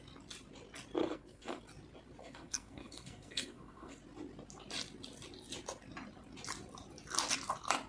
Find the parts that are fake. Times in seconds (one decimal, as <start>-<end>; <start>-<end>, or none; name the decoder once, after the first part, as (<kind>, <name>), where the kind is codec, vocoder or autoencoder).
1.0-1.6 (codec, SNAC); 2.2-4.0

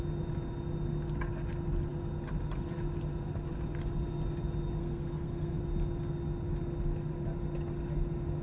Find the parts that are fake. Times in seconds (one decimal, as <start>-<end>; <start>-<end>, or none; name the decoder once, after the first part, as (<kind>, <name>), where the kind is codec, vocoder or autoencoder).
4.8-5.6 (codec, SNAC)

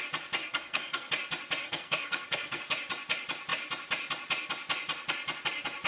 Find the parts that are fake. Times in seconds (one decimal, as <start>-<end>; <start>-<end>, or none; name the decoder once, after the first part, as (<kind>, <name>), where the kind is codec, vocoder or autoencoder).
0.4-1.1 (codec, SNAC); 1.6-2.6